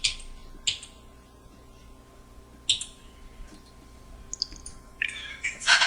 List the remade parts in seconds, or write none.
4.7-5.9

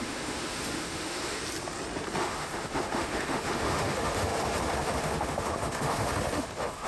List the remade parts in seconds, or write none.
0.0-1.4; 2.2-6.9

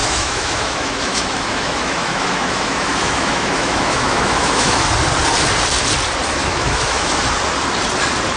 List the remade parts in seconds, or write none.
0.0-4.8; 6.4-7.1

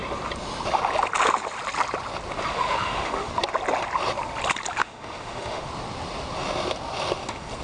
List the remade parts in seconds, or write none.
2.5-3.3; 4.8-5.7